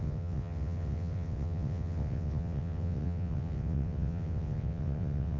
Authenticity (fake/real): fake